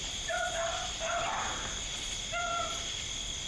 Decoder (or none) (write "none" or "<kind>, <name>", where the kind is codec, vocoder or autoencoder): none